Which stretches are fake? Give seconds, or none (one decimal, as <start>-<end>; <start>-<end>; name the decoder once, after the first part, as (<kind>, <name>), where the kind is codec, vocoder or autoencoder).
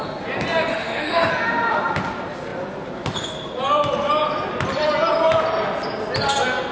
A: 0.7-1.3 (autoencoder, DAC-VAE)